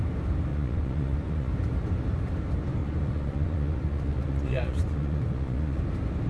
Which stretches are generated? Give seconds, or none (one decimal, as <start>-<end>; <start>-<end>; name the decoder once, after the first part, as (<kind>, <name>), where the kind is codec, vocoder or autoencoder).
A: 0.5-1.5 (vocoder, Vocos); 2.8-5.8